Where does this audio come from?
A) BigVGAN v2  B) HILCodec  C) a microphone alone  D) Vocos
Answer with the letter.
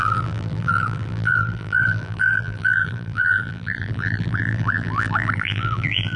A